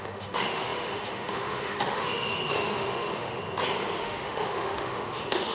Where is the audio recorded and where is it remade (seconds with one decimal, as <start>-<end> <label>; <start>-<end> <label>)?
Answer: 0.0-3.4 remade; 3.4-4.0 recorded; 4.0-5.5 remade